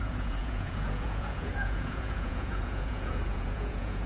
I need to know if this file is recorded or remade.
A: remade